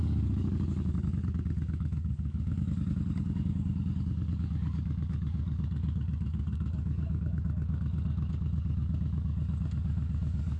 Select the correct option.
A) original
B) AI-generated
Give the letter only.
B